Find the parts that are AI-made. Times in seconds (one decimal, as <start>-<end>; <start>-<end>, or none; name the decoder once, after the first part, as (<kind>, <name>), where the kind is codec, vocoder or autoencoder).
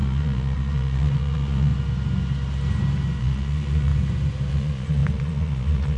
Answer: 0.0-1.7 (vocoder, Vocos); 3.2-3.9; 4.5-6.0